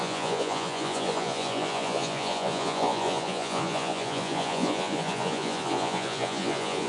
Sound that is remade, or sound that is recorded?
remade